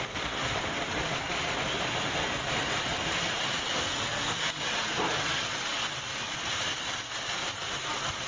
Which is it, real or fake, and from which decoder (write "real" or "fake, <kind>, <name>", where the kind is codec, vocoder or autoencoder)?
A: real